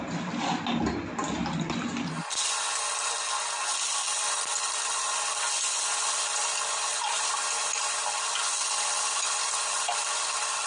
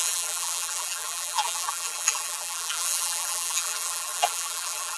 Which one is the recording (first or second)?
first